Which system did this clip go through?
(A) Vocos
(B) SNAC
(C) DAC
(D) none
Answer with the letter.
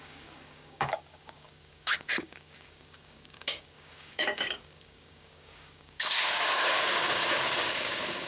C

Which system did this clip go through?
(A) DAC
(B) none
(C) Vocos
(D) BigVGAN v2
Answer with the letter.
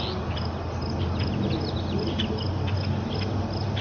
B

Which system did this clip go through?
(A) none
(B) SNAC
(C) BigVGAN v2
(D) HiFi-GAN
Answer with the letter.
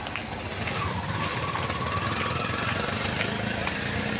A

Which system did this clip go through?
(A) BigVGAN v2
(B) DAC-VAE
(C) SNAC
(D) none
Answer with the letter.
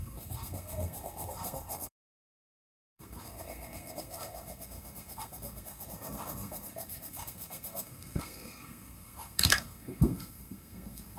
C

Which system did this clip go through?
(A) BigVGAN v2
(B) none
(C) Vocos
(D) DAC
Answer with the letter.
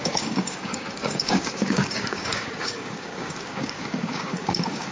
D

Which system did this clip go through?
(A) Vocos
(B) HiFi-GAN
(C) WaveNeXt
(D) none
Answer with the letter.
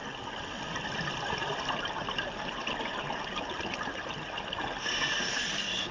D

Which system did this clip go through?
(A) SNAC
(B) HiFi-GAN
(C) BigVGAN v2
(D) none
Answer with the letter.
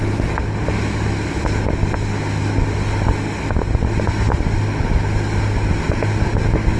D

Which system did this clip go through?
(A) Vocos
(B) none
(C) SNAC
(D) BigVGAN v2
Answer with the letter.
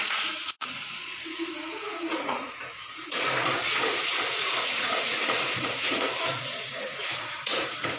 A